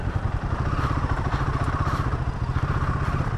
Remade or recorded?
recorded